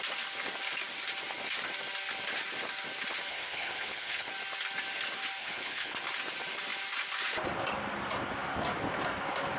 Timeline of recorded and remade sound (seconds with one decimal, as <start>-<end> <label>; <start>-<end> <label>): 0.0-3.3 recorded; 3.3-4.3 remade; 4.3-5.4 recorded; 5.4-6.0 remade; 6.0-9.6 recorded